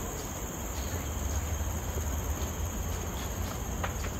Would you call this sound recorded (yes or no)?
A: yes